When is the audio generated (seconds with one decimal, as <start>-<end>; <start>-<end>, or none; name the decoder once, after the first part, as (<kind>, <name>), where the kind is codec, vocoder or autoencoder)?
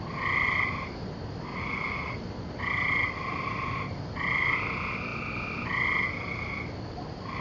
1.5-2.1 (vocoder, Vocos)